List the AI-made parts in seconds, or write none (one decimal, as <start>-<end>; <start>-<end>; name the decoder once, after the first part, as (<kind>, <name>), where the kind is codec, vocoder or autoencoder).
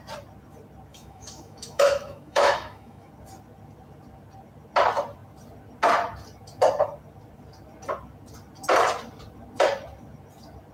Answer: 0.9-3.1 (autoencoder, DAC-VAE)